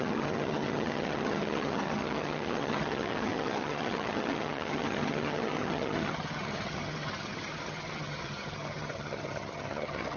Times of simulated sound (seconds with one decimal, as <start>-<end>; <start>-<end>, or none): 0.0-10.2